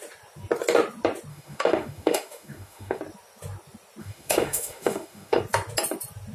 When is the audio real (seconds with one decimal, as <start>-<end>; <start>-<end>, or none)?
0.0-1.3; 3.0-4.0; 5.4-6.3